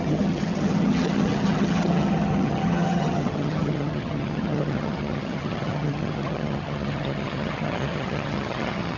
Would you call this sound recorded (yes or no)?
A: no